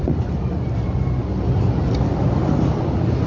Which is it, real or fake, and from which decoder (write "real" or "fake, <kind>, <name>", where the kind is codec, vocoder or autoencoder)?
real